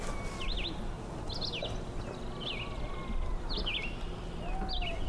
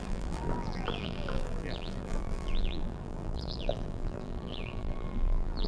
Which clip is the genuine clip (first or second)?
first